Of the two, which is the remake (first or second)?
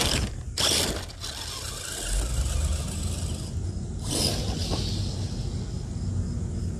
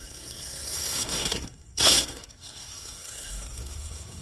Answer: second